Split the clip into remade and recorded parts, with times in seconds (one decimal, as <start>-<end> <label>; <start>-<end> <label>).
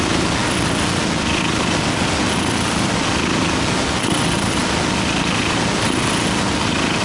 0.0-7.0 recorded